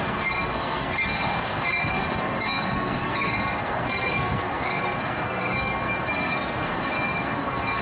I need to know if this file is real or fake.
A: fake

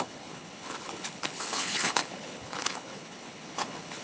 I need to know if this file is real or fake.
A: fake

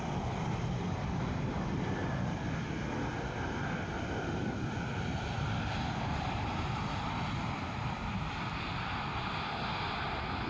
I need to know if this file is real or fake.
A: real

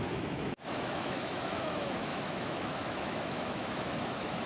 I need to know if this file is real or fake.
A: fake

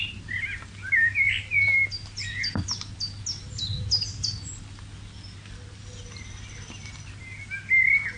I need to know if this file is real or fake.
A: real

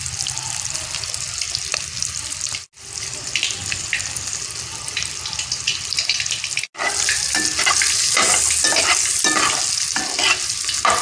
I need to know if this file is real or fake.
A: real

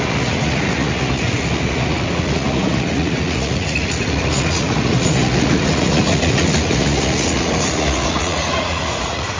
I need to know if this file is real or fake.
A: fake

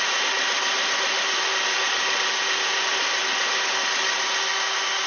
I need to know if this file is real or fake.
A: real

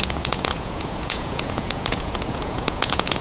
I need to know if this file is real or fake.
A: fake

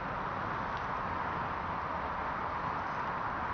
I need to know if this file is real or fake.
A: real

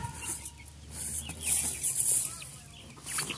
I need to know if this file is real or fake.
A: real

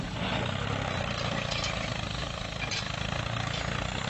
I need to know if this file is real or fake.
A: real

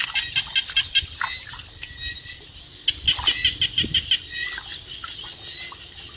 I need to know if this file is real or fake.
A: real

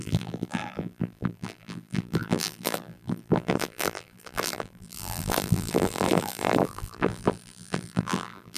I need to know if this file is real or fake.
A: fake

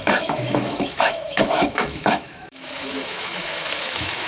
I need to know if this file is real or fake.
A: fake